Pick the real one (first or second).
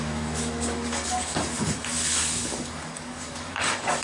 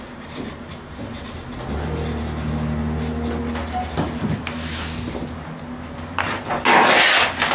second